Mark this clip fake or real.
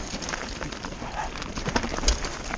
real